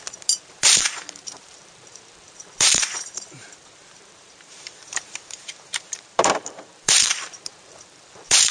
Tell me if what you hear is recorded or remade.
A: remade